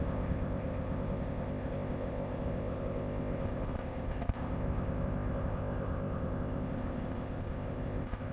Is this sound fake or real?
fake